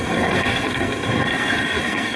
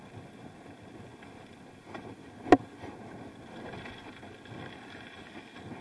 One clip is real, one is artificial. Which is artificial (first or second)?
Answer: first